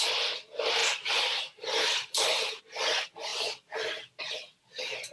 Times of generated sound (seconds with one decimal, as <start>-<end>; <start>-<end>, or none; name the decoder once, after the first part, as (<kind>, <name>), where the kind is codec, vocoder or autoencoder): 0.8-2.6 (vocoder, BigVGAN v2)